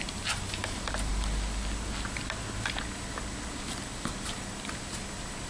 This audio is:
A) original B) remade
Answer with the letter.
A